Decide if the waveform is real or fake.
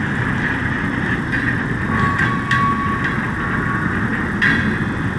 real